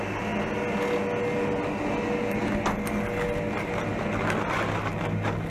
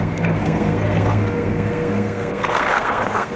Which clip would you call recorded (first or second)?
first